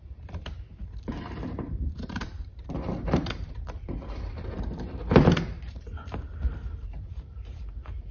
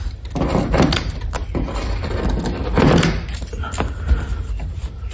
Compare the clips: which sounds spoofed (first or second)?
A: first